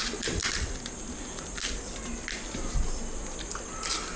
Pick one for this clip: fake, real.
real